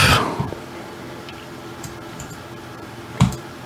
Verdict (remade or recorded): remade